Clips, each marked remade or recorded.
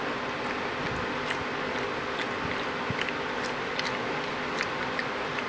recorded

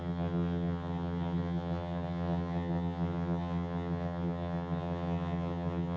remade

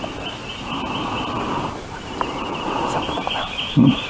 recorded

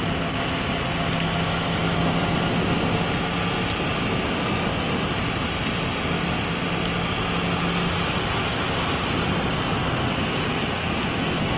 recorded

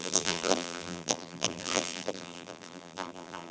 remade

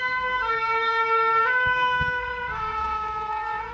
remade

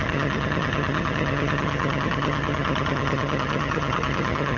remade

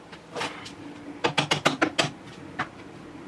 recorded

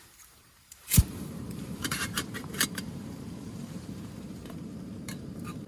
remade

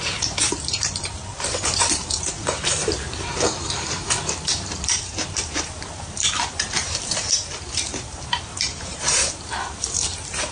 remade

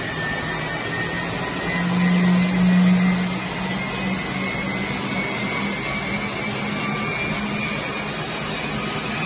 recorded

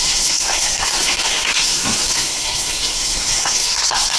remade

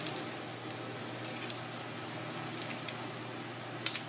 recorded